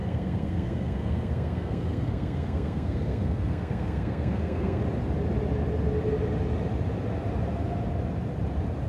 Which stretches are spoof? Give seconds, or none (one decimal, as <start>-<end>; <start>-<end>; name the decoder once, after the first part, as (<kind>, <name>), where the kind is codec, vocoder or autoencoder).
0.0-4.8 (codec, SNAC)